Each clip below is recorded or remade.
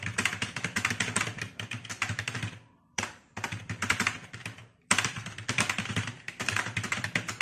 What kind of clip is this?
remade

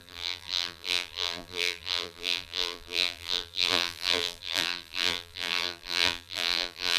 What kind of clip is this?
remade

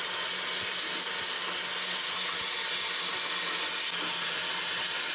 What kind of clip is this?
recorded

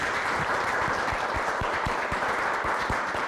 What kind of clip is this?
remade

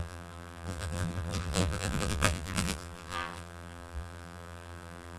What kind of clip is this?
remade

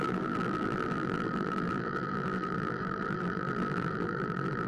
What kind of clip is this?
remade